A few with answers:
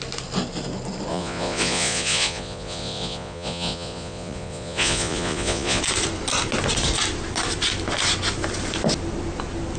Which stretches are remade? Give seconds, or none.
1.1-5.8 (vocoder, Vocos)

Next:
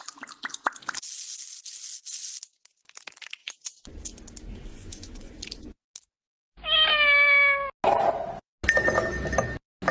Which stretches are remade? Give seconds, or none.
3.4-3.9 (vocoder, Vocos); 4.7-5.3